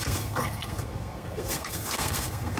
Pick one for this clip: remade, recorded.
remade